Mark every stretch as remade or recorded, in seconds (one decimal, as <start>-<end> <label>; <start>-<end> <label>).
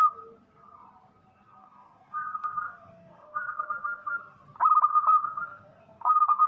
0.0-1.6 recorded; 1.6-4.2 remade; 4.2-4.9 recorded; 4.9-6.5 remade